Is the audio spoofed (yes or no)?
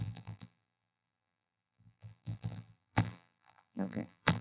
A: yes